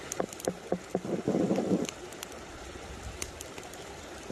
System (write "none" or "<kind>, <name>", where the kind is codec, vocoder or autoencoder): none